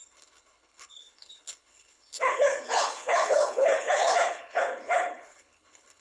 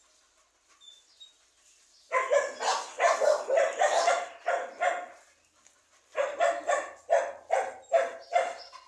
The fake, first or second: first